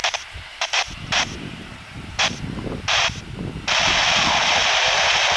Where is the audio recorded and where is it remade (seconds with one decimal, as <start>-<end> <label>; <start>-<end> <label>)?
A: 0.0-3.2 remade; 3.2-5.4 recorded